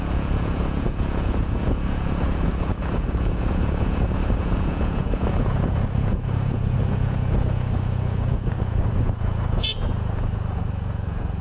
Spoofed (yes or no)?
yes